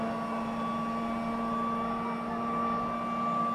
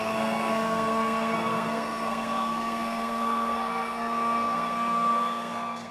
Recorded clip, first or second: first